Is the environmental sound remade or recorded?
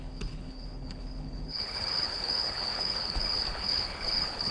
remade